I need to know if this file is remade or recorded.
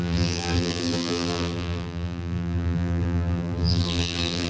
remade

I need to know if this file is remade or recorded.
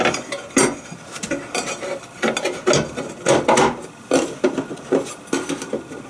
recorded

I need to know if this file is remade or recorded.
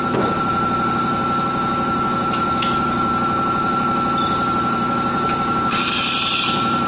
remade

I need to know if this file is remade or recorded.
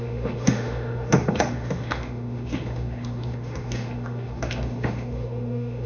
remade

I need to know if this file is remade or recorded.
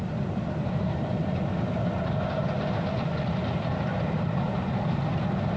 recorded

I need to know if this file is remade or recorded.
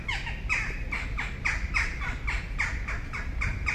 recorded